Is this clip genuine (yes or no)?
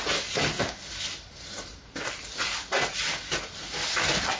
yes